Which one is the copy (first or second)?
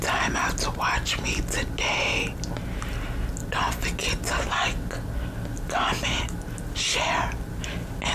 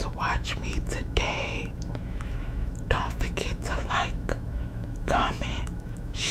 second